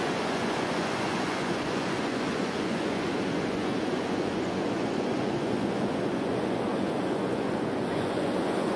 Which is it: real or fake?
fake